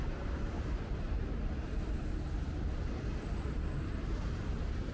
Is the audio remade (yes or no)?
yes